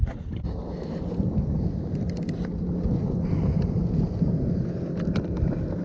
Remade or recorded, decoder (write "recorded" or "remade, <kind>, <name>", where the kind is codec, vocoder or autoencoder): recorded